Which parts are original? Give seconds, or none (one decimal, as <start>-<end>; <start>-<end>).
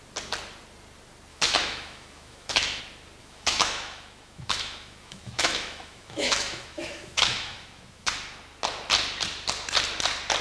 0.0-1.3; 2.8-3.2; 8.1-10.4